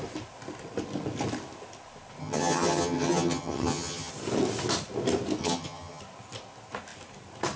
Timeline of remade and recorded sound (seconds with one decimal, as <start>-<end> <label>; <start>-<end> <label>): 0.0-2.2 recorded; 2.2-4.1 remade; 4.1-5.4 recorded; 5.4-6.0 remade; 6.0-7.6 recorded